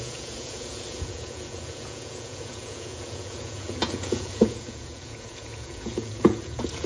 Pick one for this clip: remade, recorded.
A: remade